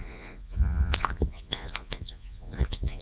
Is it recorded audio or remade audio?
remade